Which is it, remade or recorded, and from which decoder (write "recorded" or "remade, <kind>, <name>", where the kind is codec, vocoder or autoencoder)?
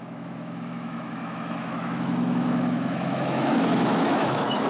remade, autoencoder, DAC-VAE